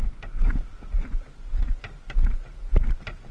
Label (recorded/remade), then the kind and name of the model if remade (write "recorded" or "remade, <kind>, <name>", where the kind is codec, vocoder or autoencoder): recorded